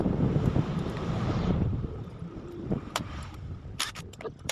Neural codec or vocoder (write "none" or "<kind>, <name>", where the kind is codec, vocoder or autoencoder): vocoder, BigVGAN v2